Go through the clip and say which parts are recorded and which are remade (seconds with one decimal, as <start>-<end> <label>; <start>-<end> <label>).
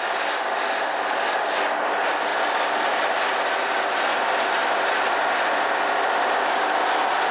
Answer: 0.0-7.3 recorded